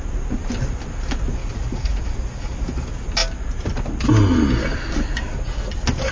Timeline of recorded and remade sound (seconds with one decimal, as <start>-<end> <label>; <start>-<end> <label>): 0.0-1.4 recorded; 1.4-2.0 remade; 2.0-6.1 recorded